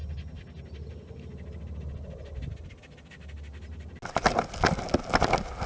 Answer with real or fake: real